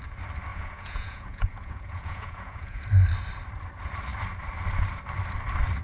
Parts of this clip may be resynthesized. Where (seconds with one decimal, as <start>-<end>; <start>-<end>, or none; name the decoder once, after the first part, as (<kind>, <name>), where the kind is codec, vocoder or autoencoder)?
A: 0.5-2.8 (vocoder, Vocos)